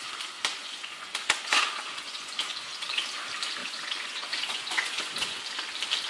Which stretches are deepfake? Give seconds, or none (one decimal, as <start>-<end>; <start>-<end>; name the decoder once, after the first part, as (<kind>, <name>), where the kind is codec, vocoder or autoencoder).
0.6-3.0 (vocoder, Vocos); 3.6-5.4